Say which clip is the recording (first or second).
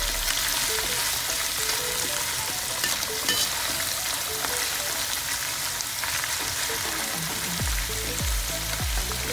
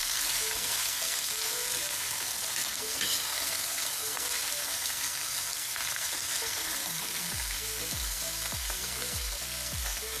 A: first